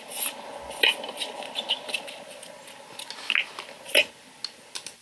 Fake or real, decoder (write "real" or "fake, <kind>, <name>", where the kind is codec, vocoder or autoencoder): real